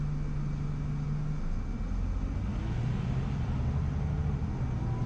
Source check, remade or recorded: recorded